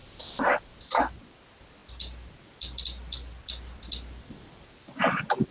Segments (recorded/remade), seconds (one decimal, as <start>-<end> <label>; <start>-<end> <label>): 0.0-5.5 recorded